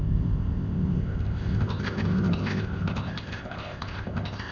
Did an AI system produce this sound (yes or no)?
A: yes